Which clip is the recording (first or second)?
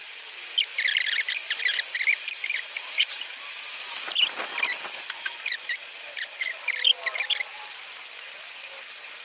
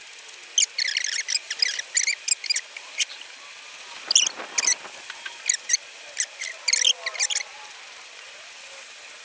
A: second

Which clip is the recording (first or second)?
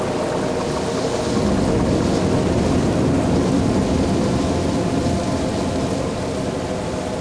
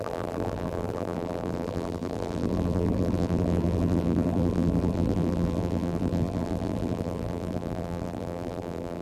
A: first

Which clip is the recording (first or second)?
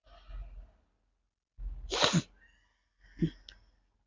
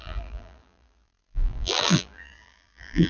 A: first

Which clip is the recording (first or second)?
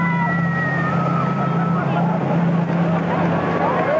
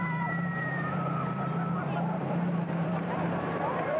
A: first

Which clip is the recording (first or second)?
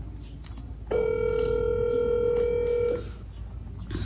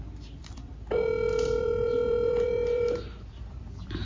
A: first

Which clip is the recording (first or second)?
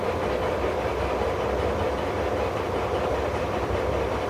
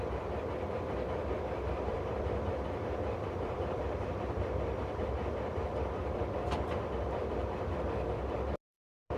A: first